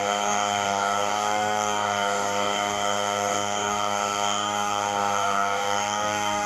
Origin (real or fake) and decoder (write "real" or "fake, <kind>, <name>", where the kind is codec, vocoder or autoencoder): fake, codec, DAC